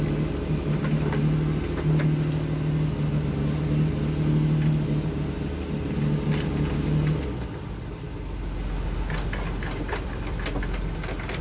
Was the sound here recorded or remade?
recorded